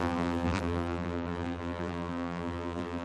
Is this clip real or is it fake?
fake